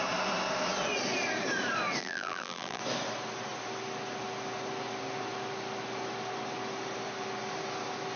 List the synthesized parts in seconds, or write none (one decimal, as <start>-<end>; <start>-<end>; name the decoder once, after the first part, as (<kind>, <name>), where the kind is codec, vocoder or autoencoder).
2.0-2.8 (vocoder, BigVGAN v2)